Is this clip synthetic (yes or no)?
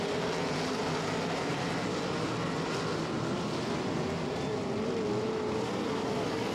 no